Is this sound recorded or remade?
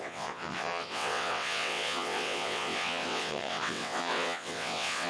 remade